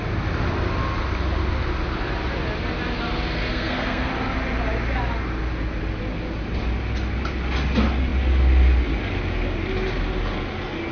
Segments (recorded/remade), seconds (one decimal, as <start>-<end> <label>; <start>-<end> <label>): 0.0-3.5 recorded; 3.5-4.1 remade; 4.1-10.9 recorded